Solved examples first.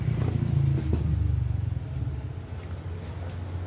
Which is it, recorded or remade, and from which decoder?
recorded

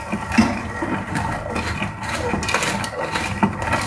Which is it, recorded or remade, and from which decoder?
recorded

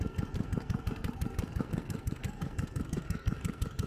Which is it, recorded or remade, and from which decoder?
remade, codec, SNAC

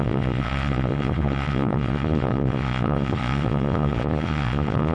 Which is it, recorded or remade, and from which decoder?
remade, vocoder, Vocos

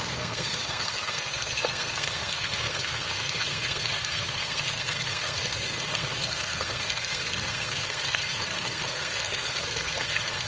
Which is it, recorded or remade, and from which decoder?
remade, codec, SNAC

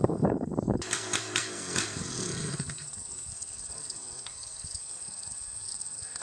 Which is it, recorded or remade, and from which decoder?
remade, codec, SNAC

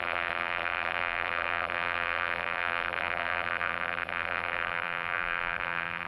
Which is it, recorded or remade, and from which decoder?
remade, vocoder, BigVGAN v2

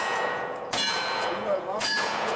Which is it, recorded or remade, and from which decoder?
remade, vocoder, Vocos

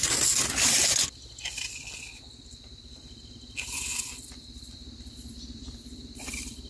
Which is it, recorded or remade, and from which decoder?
recorded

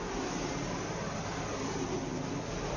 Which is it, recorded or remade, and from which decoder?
recorded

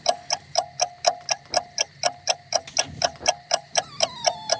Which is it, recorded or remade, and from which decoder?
recorded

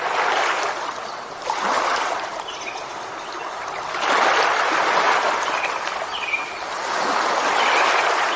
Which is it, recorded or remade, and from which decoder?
recorded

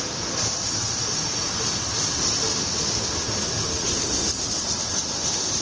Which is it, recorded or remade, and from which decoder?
recorded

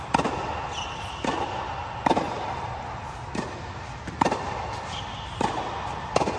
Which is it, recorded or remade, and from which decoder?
recorded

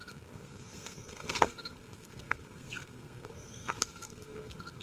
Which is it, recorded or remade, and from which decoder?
remade, codec, SNAC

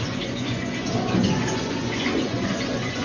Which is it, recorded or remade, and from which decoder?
remade, vocoder, Vocos